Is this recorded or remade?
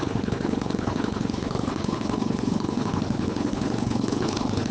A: remade